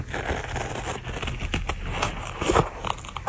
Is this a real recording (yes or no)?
yes